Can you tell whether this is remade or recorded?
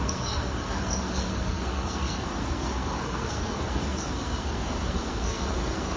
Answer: remade